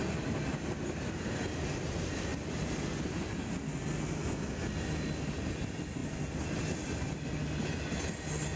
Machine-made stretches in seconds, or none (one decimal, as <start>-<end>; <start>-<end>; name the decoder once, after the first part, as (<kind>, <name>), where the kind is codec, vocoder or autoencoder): none